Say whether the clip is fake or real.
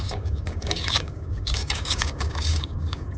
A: fake